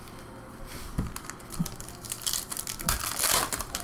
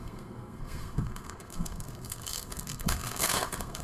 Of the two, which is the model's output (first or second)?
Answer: second